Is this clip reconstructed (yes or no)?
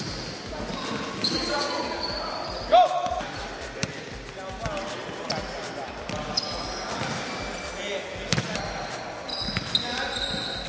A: no